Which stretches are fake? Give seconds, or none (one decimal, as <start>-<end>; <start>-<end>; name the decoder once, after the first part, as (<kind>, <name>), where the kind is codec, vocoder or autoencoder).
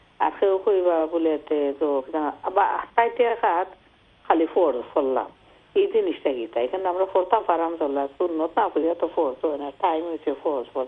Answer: none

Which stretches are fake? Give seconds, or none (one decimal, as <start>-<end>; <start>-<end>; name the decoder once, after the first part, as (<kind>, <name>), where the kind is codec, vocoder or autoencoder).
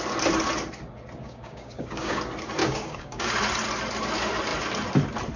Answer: 1.2-2.2 (codec, DAC); 2.6-3.3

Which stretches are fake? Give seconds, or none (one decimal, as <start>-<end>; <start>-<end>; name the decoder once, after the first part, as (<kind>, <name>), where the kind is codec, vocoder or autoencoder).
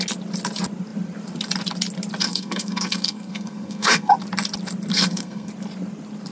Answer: 2.2-4.1 (codec, SNAC); 4.9-5.5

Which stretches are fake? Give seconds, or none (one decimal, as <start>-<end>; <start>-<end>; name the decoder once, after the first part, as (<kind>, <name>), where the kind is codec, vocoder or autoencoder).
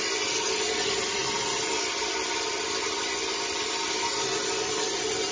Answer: none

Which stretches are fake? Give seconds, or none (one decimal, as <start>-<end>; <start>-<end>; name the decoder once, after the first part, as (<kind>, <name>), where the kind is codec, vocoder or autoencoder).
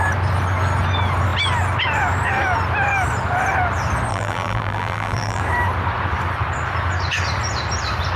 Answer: 4.1-5.4 (vocoder, BigVGAN v2)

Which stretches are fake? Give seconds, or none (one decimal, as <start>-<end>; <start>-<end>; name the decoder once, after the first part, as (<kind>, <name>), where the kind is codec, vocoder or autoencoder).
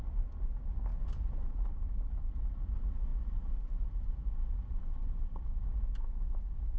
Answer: none